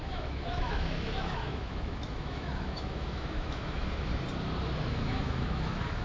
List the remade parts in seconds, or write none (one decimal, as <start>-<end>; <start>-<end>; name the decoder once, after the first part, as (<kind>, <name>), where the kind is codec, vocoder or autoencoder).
0.0-4.1 (autoencoder, DAC-VAE); 4.9-6.0